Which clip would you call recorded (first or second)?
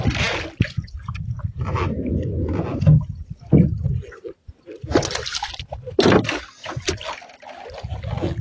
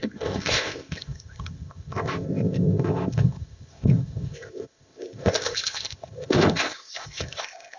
first